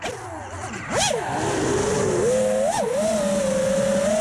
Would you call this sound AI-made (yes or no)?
no